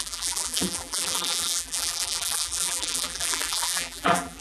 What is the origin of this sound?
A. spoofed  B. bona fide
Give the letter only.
A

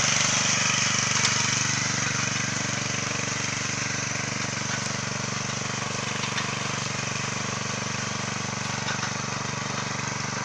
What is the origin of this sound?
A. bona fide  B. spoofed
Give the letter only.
A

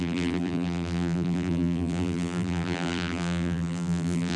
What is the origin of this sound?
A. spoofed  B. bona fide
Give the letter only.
A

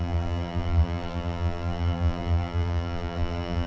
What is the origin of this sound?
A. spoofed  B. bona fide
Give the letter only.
A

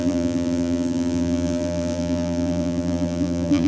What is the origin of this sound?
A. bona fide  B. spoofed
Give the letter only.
B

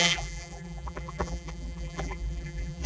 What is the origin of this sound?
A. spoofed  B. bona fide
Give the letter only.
A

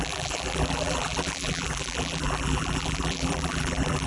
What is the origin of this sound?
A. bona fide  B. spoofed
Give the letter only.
B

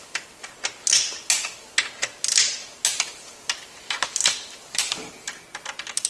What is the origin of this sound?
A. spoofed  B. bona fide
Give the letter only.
B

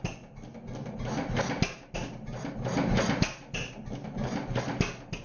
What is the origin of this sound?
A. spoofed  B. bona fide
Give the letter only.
B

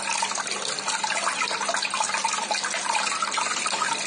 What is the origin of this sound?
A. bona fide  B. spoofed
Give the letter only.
A